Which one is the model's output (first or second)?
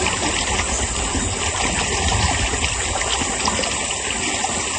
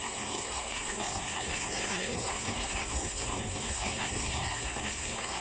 second